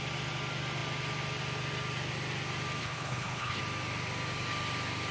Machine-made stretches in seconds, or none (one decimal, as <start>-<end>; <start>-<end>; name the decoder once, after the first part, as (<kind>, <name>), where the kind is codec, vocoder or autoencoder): 2.8-3.6 (codec, HILCodec)